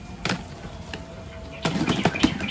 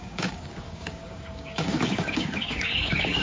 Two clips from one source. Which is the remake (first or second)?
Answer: second